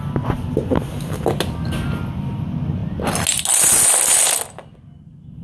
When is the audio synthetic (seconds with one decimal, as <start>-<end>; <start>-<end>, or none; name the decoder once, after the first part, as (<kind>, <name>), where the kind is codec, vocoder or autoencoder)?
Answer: none